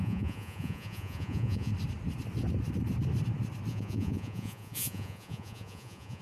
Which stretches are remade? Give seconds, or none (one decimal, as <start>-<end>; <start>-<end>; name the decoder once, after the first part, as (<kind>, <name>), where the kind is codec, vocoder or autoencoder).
0.0-1.7 (vocoder, Vocos); 3.7-6.2